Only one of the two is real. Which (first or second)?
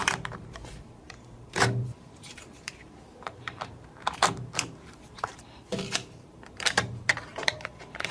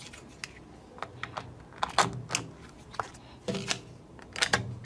second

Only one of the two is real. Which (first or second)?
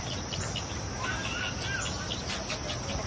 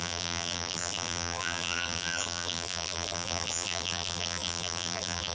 first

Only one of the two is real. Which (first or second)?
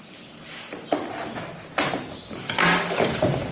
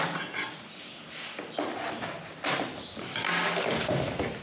second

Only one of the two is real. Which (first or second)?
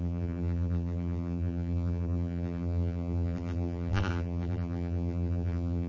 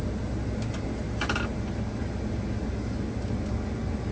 second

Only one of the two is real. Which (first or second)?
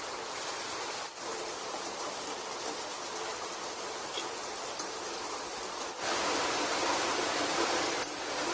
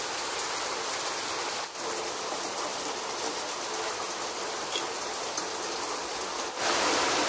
second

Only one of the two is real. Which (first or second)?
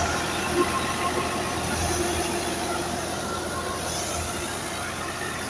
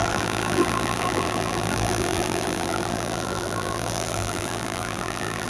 first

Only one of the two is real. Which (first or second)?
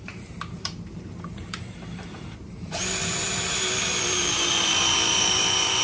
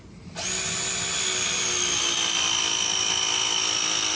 second